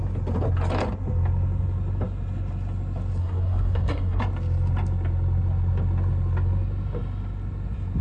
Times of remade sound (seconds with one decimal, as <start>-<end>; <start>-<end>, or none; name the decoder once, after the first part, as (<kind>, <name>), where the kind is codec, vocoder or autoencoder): 3.2-4.2 (codec, SNAC)